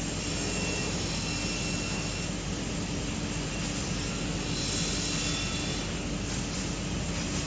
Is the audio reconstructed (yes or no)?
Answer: no